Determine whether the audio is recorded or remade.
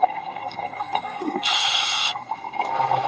remade